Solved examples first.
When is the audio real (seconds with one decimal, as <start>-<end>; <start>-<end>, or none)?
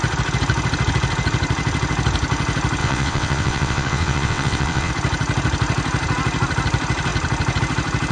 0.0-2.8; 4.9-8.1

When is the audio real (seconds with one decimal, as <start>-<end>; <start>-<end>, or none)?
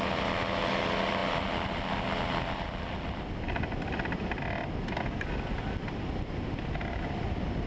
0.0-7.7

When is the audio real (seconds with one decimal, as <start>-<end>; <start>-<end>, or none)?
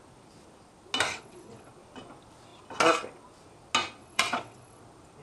0.0-1.1; 1.7-4.0; 4.8-5.2